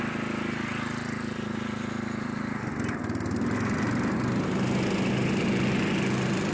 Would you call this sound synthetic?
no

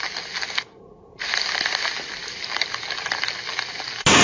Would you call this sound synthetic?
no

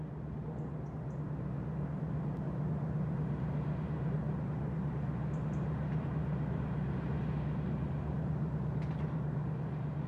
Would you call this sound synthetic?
yes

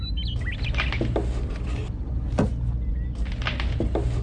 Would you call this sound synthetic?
no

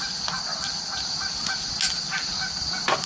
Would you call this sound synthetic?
no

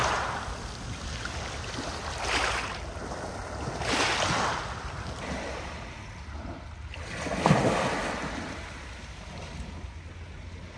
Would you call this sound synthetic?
no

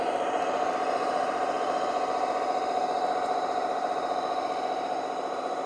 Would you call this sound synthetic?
yes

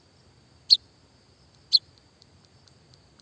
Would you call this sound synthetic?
no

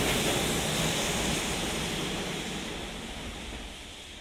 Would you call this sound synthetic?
no